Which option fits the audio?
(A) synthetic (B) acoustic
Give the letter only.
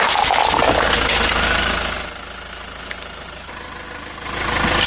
B